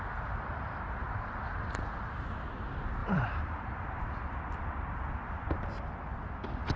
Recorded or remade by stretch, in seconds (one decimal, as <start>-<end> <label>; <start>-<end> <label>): 0.0-1.0 recorded; 1.0-2.1 remade; 2.1-3.0 recorded; 3.0-4.0 remade; 4.0-6.8 recorded